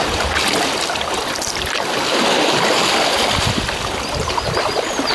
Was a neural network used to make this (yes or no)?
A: no